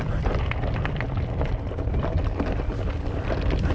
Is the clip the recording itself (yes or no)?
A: yes